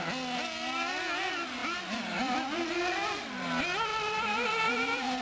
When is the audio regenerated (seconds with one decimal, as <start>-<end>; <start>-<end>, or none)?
1.6-2.7; 3.9-5.2